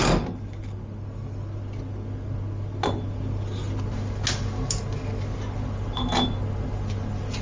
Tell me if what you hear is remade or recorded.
recorded